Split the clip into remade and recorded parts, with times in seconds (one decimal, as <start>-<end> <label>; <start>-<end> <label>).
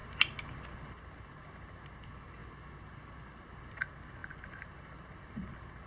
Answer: 0.0-2.4 recorded; 2.4-3.8 remade; 3.8-4.2 recorded; 4.2-5.2 remade; 5.2-5.9 recorded